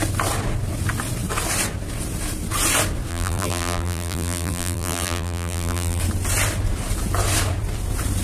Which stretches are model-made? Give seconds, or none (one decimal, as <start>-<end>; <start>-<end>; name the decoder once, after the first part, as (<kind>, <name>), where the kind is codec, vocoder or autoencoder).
3.1-6.0 (vocoder, BigVGAN v2)

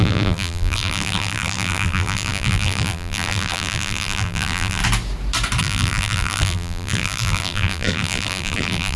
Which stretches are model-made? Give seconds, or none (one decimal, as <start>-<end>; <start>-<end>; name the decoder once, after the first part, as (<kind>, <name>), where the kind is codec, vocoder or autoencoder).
0.0-4.8 (vocoder, BigVGAN v2); 5.6-9.0

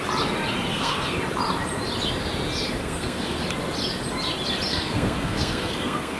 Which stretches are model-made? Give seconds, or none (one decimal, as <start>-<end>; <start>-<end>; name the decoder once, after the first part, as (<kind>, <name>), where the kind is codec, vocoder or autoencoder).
0.7-1.2 (codec, SNAC); 2.8-3.4; 4.7-6.2

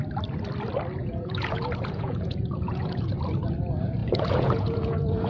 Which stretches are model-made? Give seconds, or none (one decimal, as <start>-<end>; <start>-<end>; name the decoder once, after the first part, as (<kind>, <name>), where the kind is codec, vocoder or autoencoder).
1.0-3.1 (vocoder, Vocos); 4.0-5.3

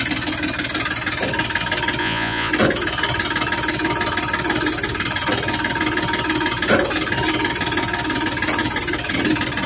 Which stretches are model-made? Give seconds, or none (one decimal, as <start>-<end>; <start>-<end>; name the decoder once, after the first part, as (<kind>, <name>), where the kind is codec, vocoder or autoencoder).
2.0-2.5 (vocoder, Vocos)

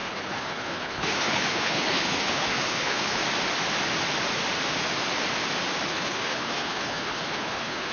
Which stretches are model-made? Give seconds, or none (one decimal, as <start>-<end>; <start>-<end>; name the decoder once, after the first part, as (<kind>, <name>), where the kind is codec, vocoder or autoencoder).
0.0-3.2 (codec, HILCodec); 5.9-7.9

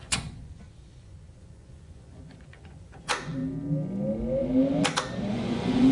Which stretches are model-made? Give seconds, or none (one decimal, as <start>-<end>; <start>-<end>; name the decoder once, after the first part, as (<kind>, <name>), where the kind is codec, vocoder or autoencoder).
0.0-3.4 (vocoder, Vocos); 5.3-5.9